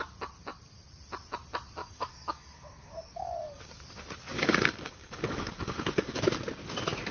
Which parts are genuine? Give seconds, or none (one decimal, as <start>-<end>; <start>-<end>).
0.0-1.8; 3.8-4.3; 6.2-7.1